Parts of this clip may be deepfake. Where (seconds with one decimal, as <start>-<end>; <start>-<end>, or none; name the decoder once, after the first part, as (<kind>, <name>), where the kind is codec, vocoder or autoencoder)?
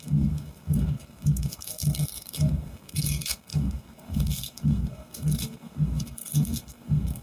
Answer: 0.0-7.2 (codec, SNAC)